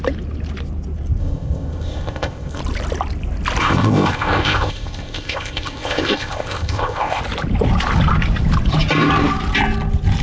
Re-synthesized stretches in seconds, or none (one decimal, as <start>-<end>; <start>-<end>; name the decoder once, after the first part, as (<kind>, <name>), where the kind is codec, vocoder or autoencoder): 1.2-2.6 (codec, ZipCodec); 3.6-7.2